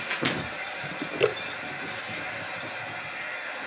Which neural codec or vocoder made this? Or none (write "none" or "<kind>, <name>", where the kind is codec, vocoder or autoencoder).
none